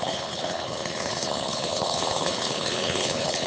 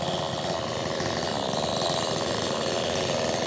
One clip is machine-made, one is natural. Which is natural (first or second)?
second